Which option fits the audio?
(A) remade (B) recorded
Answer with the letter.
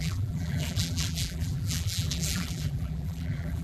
A